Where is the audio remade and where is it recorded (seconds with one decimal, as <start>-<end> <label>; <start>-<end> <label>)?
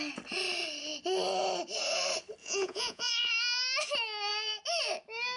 0.0-2.4 recorded; 2.4-3.3 remade; 3.3-5.4 recorded